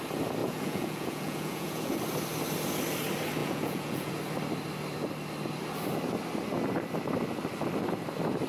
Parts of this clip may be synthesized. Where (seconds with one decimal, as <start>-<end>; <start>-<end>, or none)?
0.4-2.0; 3.4-4.1